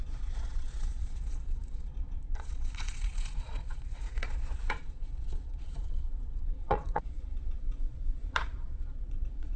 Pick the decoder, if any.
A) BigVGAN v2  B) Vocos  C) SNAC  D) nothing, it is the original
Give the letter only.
B